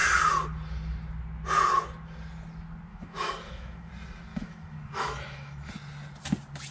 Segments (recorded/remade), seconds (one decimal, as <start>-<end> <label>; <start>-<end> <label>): 0.0-2.9 recorded; 2.9-3.9 remade; 3.9-4.3 recorded; 4.3-5.7 remade; 5.7-6.7 recorded